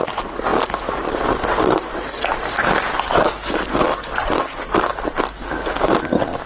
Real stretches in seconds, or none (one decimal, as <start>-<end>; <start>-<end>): 0.0-6.5